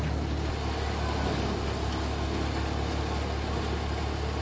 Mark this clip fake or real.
real